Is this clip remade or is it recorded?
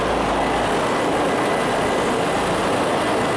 recorded